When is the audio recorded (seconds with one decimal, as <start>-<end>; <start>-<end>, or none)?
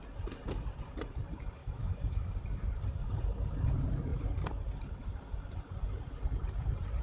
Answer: 0.0-1.6; 2.3-7.0